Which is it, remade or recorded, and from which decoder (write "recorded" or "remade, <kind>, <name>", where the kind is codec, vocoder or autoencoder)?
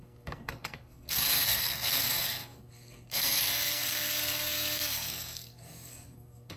remade, codec, SNAC